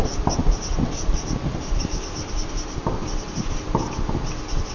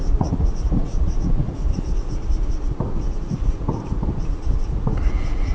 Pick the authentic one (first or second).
first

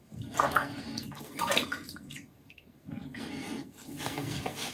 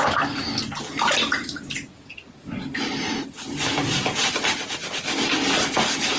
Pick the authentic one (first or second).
second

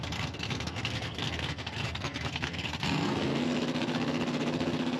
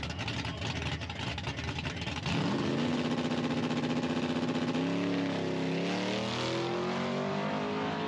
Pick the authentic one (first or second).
second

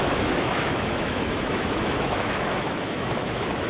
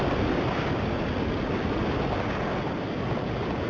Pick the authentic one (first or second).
second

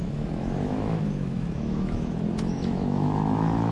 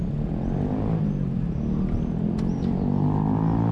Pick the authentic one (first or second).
second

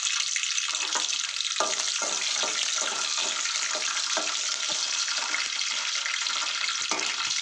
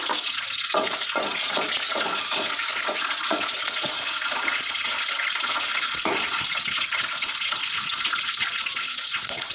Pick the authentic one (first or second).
first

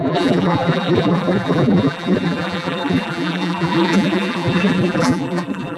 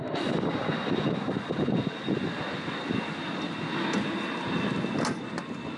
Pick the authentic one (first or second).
second